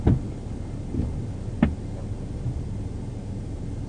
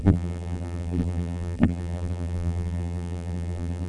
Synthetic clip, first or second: second